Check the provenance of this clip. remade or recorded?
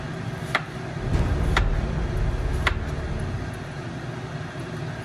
recorded